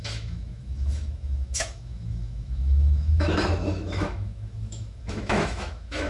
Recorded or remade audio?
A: remade